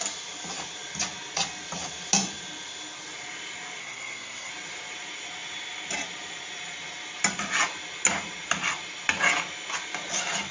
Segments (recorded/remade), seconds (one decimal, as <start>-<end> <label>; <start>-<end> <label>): 0.0-3.8 recorded; 3.8-4.5 remade; 4.5-10.5 recorded